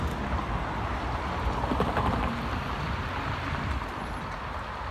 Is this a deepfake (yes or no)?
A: no